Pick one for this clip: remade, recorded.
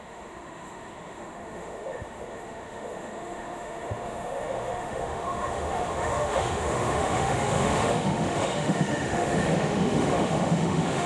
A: remade